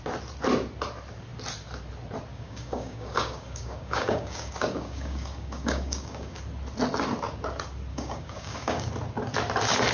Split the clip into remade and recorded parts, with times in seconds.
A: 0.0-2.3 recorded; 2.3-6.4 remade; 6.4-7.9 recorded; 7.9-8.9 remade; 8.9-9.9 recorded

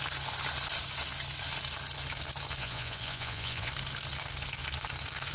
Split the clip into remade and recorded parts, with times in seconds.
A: 0.0-2.6 recorded; 2.6-3.7 remade; 3.7-5.3 recorded

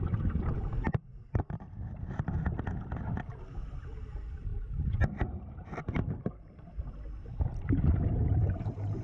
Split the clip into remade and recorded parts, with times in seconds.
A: 0.0-1.1 recorded; 1.1-3.1 remade; 3.1-4.5 recorded; 4.5-8.1 remade; 8.1-9.0 recorded

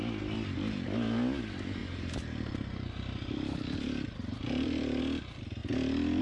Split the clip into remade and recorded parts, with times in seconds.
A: 0.0-1.8 recorded; 1.8-5.0 remade; 5.0-6.2 recorded

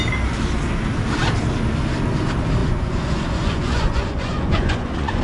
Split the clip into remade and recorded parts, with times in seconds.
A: 0.0-2.6 recorded; 2.6-5.2 remade

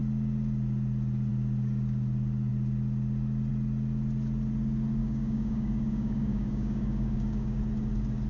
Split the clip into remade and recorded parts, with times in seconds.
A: 0.0-5.0 recorded; 5.0-7.6 remade; 7.6-8.3 recorded

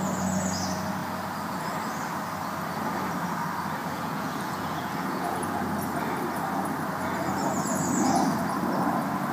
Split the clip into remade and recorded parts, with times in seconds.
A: 0.0-3.8 recorded; 3.8-5.6 remade; 5.6-9.3 recorded

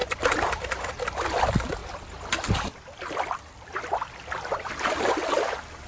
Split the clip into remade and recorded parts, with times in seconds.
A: 0.0-0.9 recorded; 0.9-1.8 remade; 1.8-2.3 recorded; 2.3-5.9 remade